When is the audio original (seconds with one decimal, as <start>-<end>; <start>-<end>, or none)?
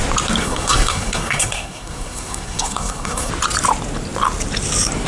0.0-0.4; 3.3-5.1